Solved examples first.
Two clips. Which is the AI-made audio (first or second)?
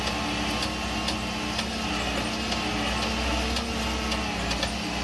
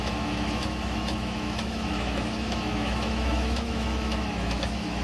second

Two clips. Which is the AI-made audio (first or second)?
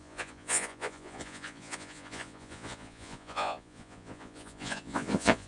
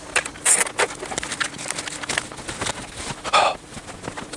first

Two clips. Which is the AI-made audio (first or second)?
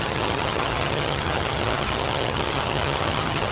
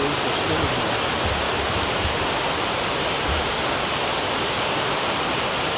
first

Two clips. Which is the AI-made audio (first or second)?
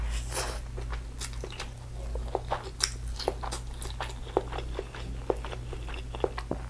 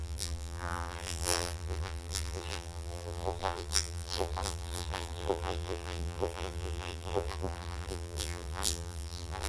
second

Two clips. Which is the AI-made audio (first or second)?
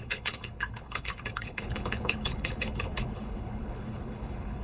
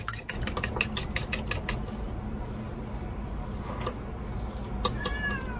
first